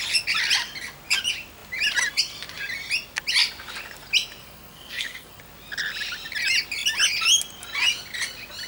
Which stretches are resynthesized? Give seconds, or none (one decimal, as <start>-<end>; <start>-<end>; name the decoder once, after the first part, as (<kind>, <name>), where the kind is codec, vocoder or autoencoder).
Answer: 4.4-5.4 (codec, SNAC)